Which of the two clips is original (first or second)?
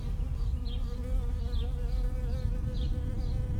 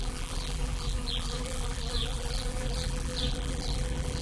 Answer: first